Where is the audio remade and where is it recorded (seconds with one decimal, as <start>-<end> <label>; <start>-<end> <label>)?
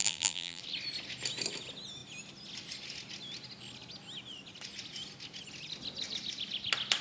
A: 0.0-0.6 remade; 0.6-7.0 recorded